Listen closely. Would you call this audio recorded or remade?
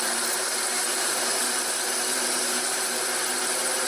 remade